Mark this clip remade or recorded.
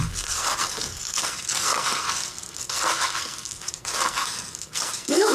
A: remade